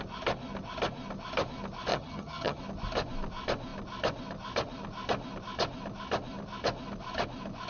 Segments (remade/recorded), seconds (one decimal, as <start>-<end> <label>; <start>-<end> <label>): 0.0-1.9 recorded; 1.9-2.6 remade; 2.6-7.7 recorded